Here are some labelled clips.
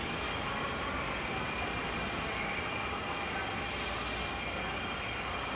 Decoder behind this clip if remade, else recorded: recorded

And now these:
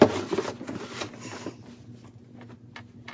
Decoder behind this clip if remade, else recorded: recorded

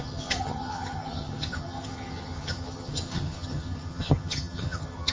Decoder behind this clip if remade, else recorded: remade, vocoder, HiFi-GAN